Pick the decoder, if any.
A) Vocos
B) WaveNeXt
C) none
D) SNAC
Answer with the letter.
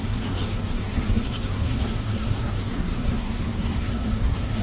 D